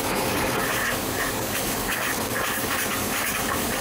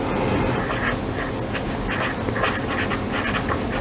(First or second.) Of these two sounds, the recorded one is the second